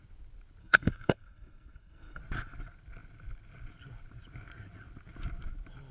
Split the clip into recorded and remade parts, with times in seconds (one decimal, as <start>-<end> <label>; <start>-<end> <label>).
0.0-0.6 recorded; 0.6-2.2 remade; 2.2-5.9 recorded